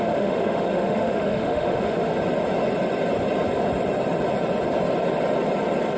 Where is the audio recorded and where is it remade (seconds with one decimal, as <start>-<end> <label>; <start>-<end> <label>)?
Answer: 0.0-2.1 remade; 2.1-6.0 recorded